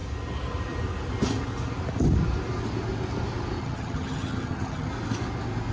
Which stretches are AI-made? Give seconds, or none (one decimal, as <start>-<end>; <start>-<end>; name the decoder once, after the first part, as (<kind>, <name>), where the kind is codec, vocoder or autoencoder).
3.6-4.9 (vocoder, HiFi-GAN)